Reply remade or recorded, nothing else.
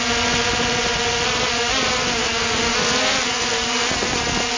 recorded